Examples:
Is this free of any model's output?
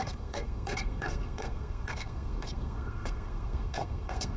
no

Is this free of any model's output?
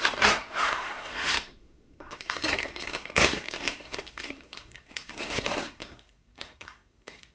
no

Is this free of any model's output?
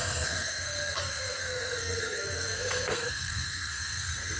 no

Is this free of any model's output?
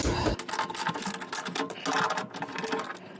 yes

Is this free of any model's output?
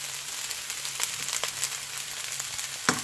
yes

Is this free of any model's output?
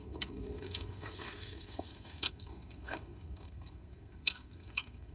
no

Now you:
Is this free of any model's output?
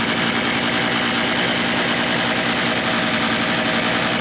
yes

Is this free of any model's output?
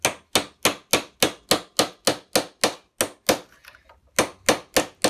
yes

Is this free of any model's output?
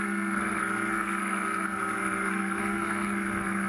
no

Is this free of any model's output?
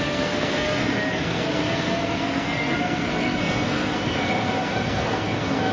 no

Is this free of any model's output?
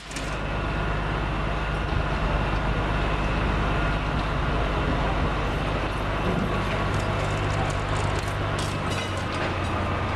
yes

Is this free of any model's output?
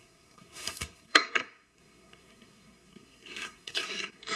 no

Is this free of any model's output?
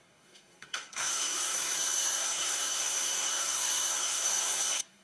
no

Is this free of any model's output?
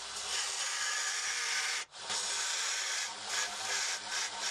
yes